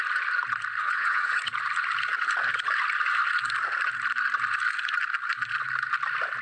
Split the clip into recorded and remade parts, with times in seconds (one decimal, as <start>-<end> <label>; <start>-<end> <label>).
0.0-0.8 recorded; 0.8-1.4 remade; 1.4-6.4 recorded